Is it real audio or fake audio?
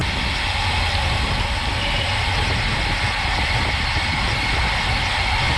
real